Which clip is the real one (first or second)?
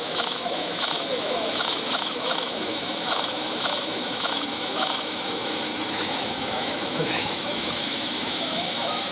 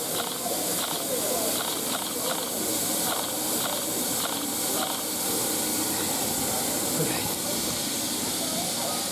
second